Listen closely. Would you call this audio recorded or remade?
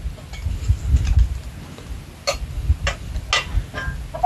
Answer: recorded